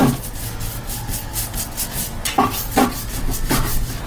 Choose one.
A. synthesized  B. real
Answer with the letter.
B